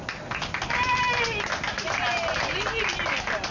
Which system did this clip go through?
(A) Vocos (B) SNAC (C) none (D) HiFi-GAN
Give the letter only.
C